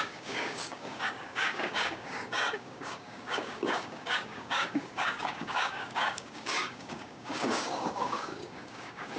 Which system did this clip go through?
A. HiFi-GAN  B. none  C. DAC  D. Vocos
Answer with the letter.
C